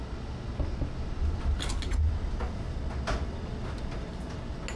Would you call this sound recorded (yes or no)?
yes